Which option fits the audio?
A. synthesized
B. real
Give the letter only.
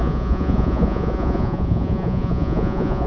A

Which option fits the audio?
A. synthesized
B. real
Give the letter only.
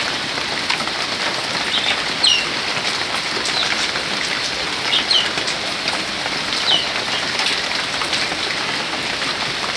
B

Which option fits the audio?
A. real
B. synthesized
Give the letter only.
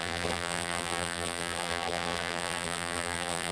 B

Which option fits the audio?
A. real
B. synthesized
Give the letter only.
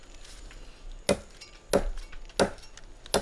A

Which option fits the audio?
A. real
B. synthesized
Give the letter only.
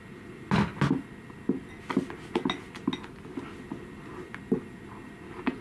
A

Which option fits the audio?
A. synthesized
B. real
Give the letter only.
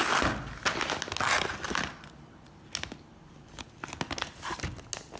B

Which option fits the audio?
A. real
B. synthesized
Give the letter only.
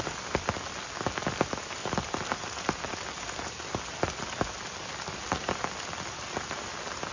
A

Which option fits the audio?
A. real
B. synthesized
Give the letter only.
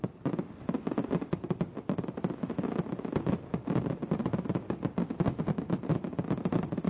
A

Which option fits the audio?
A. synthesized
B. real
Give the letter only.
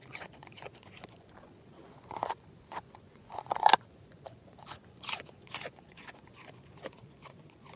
A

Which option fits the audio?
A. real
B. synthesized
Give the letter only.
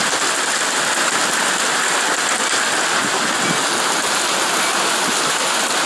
A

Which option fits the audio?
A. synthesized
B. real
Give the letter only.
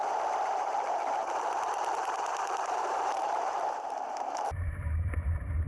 A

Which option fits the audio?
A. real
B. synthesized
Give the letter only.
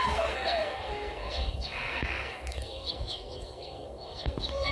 B